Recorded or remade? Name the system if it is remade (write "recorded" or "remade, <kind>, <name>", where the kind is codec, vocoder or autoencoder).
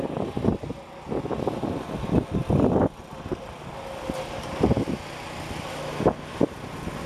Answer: recorded